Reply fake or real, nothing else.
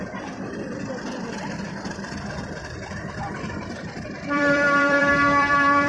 fake